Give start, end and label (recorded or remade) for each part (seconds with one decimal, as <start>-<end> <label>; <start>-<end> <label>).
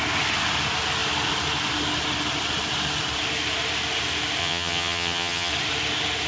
0.0-4.4 recorded; 4.4-5.5 remade; 5.5-6.3 recorded